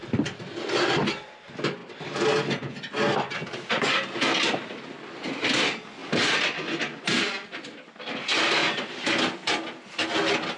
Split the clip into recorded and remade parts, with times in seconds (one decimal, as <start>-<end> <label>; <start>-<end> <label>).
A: 0.0-8.6 recorded; 8.6-9.2 remade; 9.2-10.6 recorded

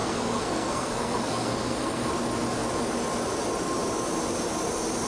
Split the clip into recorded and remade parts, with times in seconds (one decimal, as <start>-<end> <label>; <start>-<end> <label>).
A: 0.0-2.1 remade; 2.1-5.1 recorded

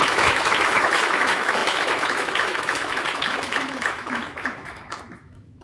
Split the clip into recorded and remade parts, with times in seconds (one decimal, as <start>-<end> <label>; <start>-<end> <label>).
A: 0.0-5.6 remade

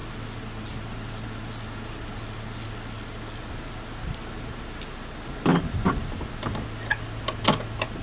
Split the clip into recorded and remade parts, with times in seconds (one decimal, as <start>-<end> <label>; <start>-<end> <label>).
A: 0.0-5.5 recorded; 5.5-6.3 remade; 6.3-8.0 recorded

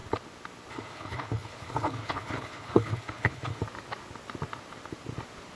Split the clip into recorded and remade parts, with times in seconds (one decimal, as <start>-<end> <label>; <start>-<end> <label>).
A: 0.0-0.7 recorded; 0.7-3.6 remade; 3.6-5.6 recorded

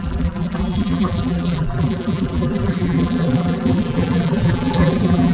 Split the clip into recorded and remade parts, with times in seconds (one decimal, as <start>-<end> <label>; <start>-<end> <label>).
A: 0.0-5.3 remade

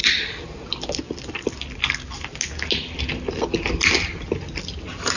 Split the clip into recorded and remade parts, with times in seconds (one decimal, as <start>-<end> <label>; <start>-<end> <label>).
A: 0.0-1.5 remade; 1.5-5.2 recorded